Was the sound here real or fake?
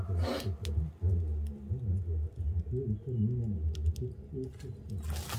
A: real